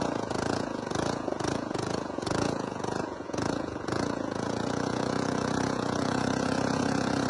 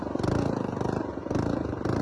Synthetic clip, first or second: first